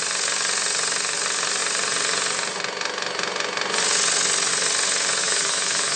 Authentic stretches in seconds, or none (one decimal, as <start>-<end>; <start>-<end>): 0.0-5.2